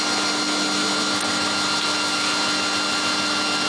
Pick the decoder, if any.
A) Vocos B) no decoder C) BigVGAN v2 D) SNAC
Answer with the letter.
B